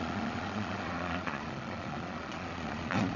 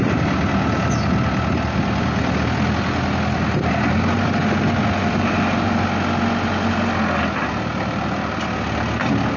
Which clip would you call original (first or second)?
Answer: second